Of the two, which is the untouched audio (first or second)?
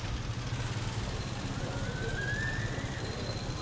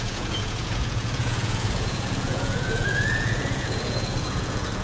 first